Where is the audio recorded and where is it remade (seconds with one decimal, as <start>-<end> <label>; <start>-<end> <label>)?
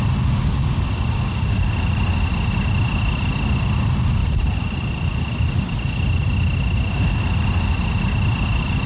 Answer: 0.0-4.2 recorded; 4.2-5.3 remade; 5.3-8.9 recorded